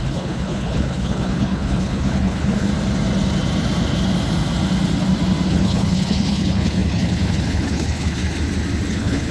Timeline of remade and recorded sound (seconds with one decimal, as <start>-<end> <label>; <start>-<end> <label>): 0.0-2.7 remade; 2.7-5.5 recorded; 5.5-8.2 remade; 8.2-8.9 recorded; 8.9-9.3 remade